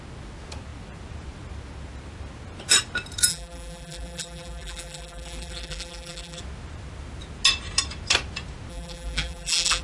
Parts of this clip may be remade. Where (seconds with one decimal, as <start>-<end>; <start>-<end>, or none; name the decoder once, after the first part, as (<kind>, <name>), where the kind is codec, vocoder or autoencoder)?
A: 3.3-6.4 (vocoder, BigVGAN v2); 8.7-9.8